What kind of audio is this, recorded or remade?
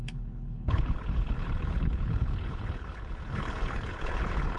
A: remade